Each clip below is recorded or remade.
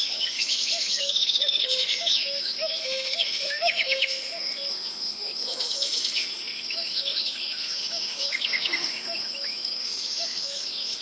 remade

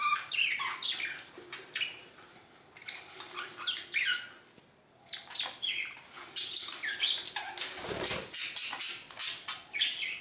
recorded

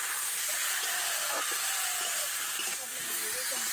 recorded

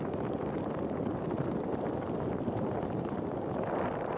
recorded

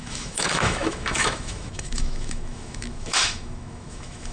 remade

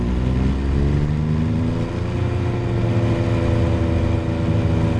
recorded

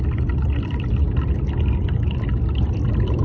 recorded